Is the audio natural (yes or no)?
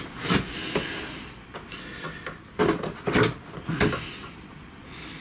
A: yes